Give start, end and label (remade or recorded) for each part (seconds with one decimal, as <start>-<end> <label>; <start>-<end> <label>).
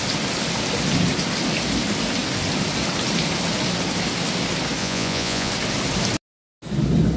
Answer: 0.0-4.8 recorded; 4.8-5.5 remade; 5.5-7.2 recorded